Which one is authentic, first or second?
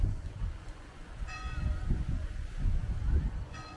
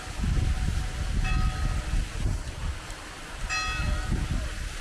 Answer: second